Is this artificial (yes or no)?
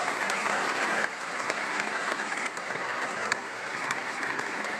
yes